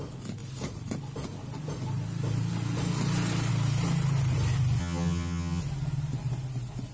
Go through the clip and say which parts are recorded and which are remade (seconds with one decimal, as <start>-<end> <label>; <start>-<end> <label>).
0.0-4.8 recorded; 4.8-5.6 remade; 5.6-6.9 recorded